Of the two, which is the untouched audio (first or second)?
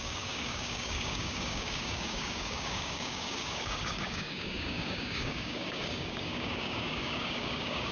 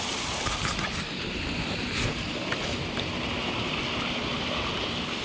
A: second